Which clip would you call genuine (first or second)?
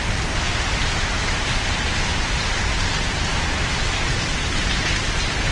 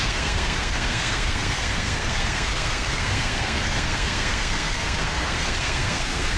first